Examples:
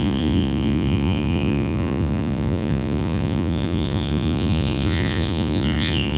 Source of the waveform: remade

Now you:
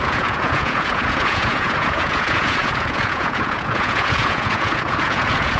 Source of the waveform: remade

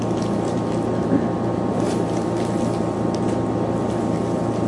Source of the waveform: recorded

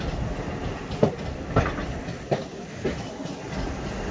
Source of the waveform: recorded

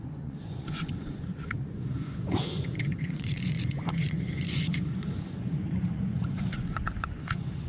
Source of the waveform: remade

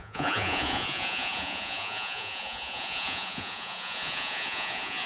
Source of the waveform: remade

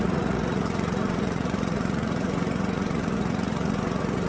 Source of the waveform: remade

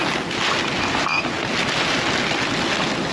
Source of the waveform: recorded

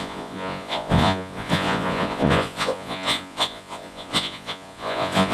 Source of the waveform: remade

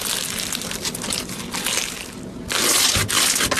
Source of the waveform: recorded